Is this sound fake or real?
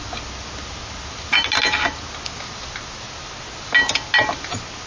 real